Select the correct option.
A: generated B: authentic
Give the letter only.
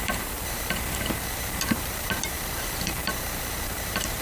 A